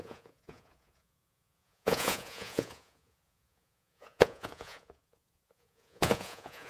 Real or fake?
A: fake